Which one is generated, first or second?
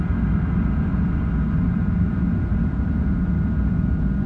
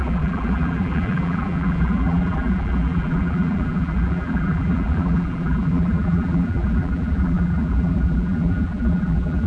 second